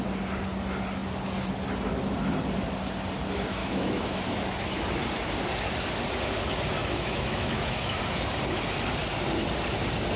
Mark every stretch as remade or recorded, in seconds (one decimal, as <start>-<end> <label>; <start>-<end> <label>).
0.0-3.6 recorded; 3.6-4.2 remade; 4.2-6.8 recorded; 6.8-8.0 remade; 8.0-10.2 recorded